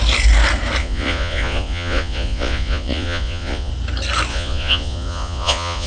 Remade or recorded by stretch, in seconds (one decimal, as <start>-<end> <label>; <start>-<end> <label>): 0.0-0.8 recorded; 0.8-3.7 remade; 3.7-4.3 recorded; 4.3-5.9 remade